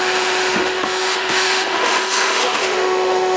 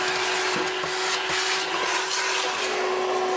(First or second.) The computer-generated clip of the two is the first